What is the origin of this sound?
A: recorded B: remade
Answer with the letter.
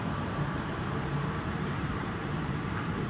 B